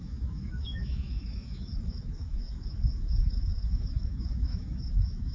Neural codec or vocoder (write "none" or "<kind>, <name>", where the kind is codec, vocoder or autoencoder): autoencoder, DAC-VAE